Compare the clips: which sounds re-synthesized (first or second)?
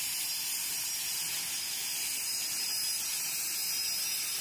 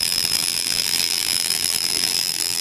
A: second